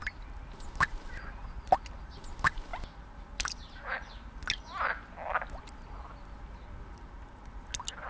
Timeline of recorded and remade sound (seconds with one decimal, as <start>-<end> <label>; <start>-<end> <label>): 0.0-8.1 recorded